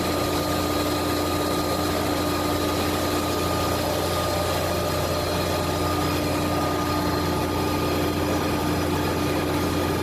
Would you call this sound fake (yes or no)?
no